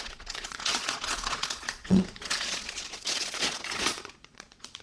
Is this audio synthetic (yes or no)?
yes